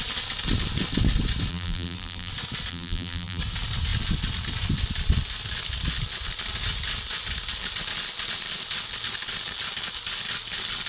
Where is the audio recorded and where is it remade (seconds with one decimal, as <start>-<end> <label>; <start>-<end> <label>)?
0.0-1.5 recorded; 1.5-2.3 remade; 2.3-2.7 recorded; 2.7-3.4 remade; 3.4-10.9 recorded